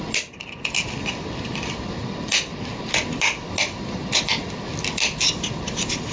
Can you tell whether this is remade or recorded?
recorded